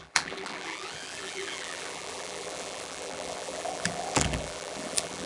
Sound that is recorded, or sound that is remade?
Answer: remade